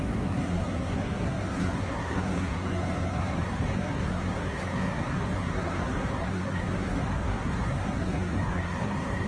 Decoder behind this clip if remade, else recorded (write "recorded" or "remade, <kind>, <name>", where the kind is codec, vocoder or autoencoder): remade, codec, SNAC